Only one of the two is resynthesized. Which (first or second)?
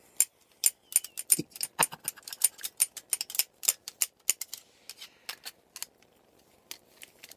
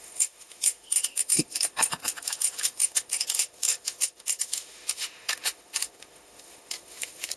second